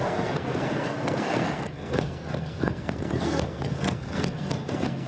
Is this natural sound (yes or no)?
no